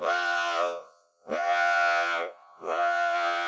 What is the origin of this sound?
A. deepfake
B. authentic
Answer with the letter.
A